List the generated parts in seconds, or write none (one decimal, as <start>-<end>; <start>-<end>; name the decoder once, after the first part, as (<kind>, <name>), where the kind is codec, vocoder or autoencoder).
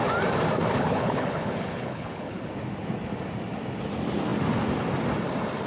0.7-2.5 (codec, HILCodec)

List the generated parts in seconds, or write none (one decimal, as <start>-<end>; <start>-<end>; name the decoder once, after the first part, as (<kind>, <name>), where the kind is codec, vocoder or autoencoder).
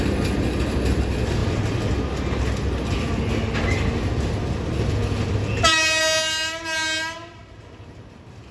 none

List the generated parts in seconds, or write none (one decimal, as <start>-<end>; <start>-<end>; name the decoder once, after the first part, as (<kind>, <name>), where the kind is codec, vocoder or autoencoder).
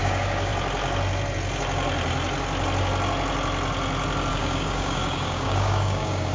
0.0-0.5 (codec, DAC); 4.3-6.3